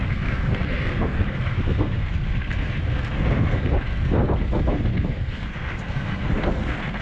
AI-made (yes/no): yes